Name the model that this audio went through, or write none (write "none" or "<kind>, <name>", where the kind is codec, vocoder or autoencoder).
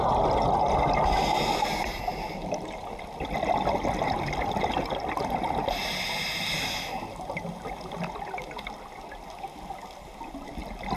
none